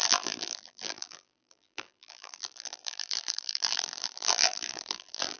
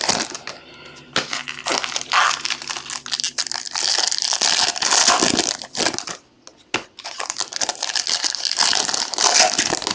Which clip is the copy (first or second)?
first